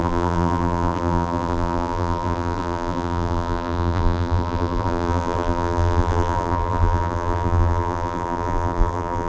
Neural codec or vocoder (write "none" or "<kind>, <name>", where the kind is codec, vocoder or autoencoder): vocoder, BigVGAN v2